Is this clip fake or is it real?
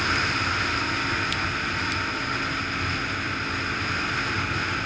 real